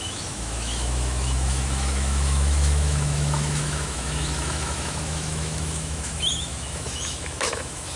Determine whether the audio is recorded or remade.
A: remade